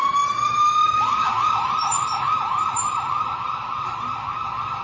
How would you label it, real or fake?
real